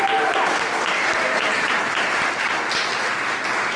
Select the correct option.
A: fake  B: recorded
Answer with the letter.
B